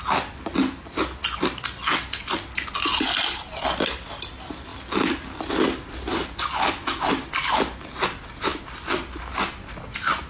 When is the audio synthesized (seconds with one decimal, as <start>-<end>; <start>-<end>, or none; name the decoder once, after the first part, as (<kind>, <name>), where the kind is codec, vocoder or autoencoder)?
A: none